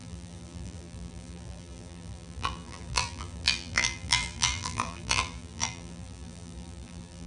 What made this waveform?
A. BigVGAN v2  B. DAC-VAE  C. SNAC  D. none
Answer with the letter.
A